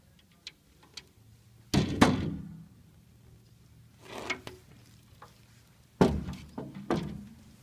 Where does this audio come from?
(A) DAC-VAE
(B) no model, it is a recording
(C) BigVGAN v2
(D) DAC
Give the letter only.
B